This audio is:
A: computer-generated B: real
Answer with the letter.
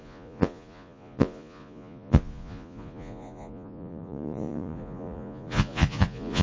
A